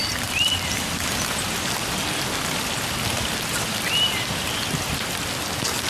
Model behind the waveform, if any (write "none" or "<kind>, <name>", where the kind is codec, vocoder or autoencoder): vocoder, BigVGAN v2